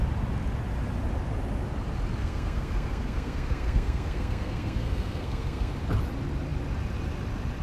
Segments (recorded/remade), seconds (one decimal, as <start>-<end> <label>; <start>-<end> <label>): 0.0-2.2 recorded; 2.2-5.7 remade; 5.7-7.6 recorded